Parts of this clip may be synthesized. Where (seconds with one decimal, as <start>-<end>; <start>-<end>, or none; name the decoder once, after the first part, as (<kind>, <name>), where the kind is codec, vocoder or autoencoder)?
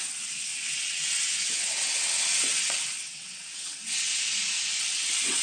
0.0-4.1 (vocoder, WaveNeXt); 4.8-5.4